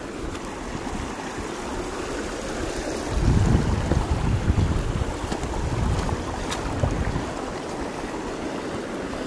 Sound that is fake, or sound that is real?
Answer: real